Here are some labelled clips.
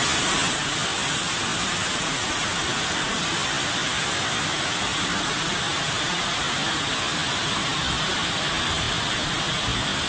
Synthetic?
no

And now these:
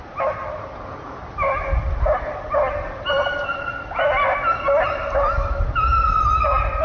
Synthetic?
no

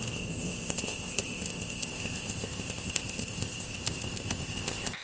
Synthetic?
yes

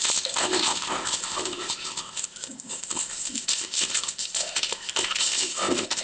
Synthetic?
yes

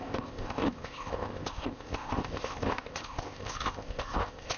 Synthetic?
yes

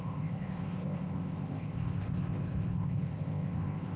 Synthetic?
yes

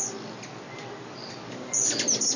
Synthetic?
no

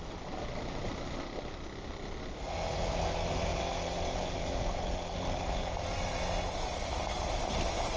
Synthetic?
no